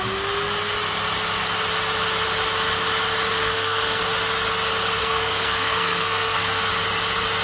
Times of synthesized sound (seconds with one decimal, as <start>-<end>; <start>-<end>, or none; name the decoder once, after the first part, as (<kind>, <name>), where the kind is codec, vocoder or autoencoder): 3.4-4.0 (codec, SNAC); 5.0-6.7